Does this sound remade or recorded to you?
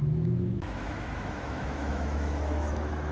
remade